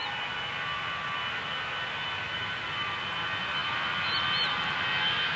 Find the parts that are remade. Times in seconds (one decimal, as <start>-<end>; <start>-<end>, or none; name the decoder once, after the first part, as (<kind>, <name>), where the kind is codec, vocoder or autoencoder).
none